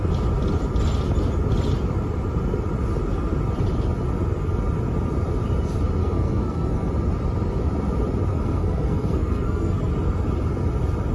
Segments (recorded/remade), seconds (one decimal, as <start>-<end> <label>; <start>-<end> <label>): 0.0-6.0 recorded; 6.0-6.9 remade; 6.9-8.3 recorded; 8.3-9.9 remade; 9.9-11.1 recorded